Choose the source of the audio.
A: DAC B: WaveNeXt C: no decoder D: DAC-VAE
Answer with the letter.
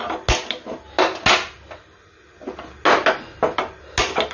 C